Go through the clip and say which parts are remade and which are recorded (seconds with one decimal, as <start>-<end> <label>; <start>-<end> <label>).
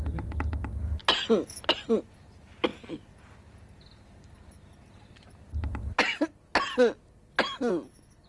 0.0-8.3 recorded